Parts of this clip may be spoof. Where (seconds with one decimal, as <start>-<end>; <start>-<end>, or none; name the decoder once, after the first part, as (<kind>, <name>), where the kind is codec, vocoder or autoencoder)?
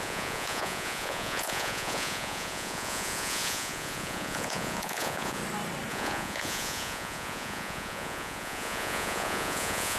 0.0-5.4 (vocoder, Vocos); 5.9-10.0